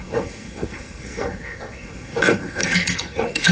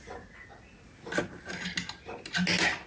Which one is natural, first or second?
second